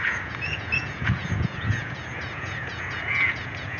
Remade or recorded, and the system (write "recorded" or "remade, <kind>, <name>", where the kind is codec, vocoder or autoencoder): remade, vocoder, Vocos